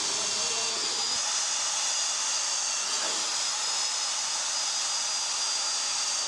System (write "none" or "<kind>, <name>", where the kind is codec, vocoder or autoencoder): none